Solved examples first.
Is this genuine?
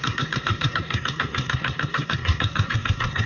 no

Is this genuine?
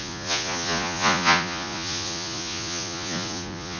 no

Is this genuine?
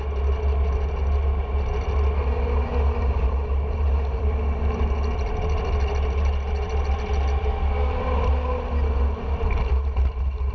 yes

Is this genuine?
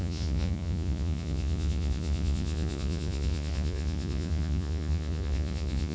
no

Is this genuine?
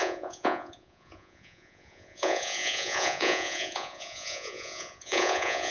no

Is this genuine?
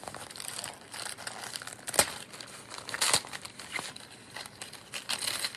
yes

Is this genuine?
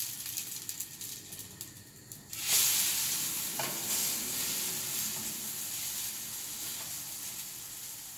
yes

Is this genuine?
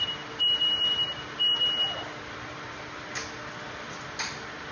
yes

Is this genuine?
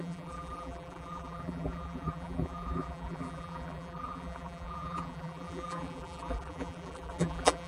no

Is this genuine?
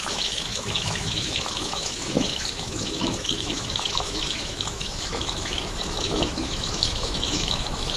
no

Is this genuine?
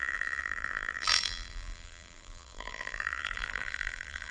no